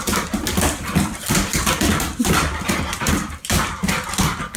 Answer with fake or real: real